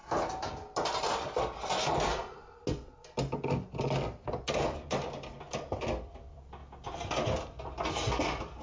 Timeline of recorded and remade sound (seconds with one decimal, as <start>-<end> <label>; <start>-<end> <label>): 0.0-4.3 recorded; 4.3-6.6 remade; 6.6-8.2 recorded; 8.2-8.6 remade